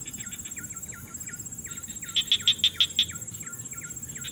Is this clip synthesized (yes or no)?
no